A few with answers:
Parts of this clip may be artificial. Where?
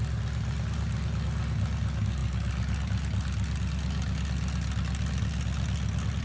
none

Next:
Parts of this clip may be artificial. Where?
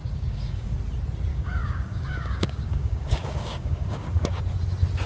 0.0-0.7 (codec, DAC); 1.3-4.4